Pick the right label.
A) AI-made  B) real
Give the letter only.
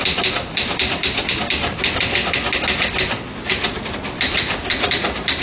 B